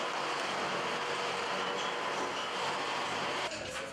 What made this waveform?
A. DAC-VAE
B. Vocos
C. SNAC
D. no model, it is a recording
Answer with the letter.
D